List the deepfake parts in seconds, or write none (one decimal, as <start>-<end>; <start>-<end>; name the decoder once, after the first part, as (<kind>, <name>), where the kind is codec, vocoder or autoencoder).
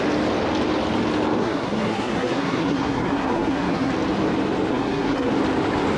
1.4-3.9 (codec, SNAC); 4.7-5.3